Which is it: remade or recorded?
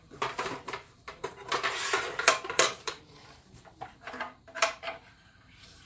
remade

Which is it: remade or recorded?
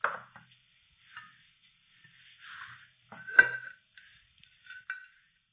recorded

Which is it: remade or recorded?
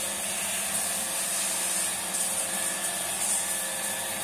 recorded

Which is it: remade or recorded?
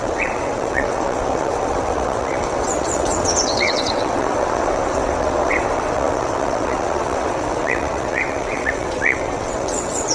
remade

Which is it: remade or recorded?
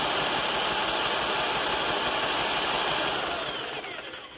recorded